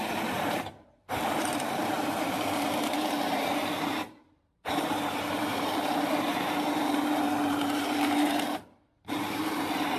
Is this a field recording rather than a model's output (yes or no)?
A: no